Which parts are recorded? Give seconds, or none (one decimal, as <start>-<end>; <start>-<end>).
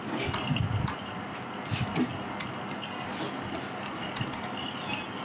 0.0-5.2